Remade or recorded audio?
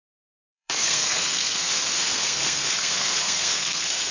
remade